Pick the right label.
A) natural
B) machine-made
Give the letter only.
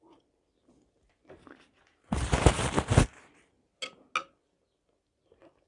A